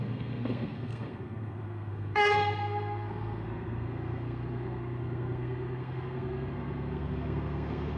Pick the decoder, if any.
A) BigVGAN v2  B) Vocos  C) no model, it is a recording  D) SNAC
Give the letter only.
D